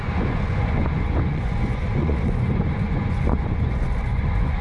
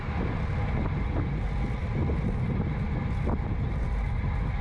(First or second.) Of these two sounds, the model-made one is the first